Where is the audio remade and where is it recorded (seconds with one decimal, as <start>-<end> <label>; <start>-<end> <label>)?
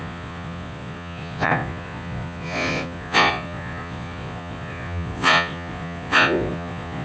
0.0-7.0 remade